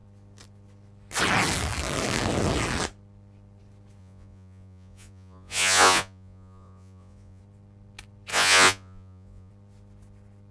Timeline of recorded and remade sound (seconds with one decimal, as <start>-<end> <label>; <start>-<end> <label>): 0.0-4.0 recorded; 4.0-7.4 remade; 7.4-8.3 recorded; 8.3-9.5 remade; 9.5-10.5 recorded